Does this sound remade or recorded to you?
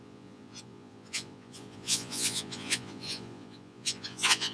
remade